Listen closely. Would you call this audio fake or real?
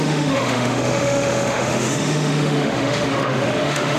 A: fake